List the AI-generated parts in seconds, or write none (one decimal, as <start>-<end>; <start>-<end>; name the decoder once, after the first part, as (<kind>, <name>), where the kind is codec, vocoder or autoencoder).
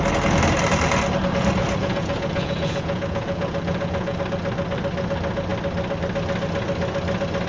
1.6-4.2 (vocoder, Vocos)